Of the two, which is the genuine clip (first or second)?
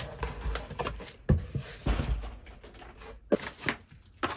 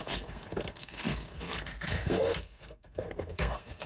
first